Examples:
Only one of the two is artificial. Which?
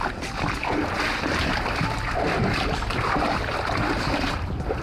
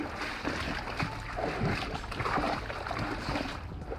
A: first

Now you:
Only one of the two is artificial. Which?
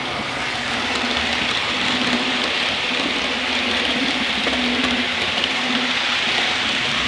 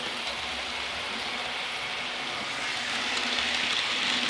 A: first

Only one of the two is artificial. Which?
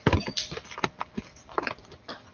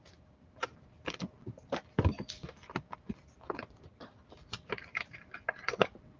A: second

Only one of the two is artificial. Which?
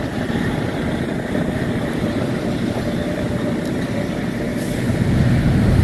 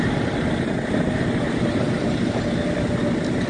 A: first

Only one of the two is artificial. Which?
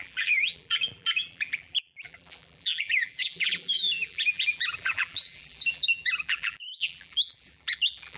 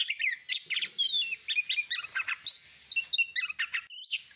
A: first